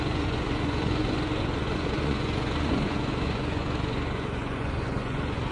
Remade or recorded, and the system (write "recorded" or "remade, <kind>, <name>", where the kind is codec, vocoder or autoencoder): remade, vocoder, Vocos